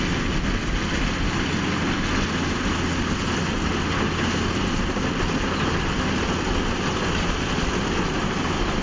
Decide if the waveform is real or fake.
real